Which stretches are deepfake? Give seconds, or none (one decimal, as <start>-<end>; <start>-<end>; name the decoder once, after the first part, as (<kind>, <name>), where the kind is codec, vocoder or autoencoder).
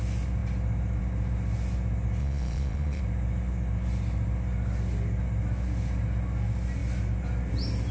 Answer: 2.2-3.0 (vocoder, Vocos)